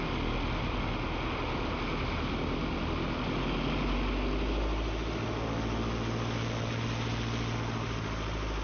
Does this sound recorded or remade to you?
recorded